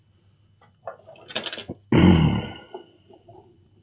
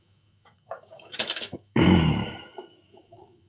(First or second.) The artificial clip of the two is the second